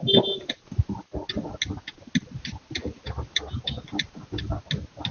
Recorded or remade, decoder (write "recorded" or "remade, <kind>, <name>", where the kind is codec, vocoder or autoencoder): recorded